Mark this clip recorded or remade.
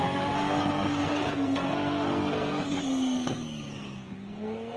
remade